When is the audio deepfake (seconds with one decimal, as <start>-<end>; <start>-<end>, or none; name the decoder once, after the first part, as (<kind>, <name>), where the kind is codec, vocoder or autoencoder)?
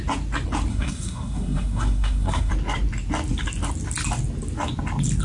0.7-2.5 (codec, SNAC)